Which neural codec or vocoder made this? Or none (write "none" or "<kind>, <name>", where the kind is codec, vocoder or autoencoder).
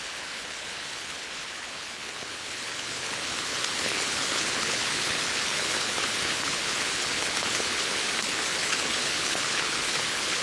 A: codec, HILCodec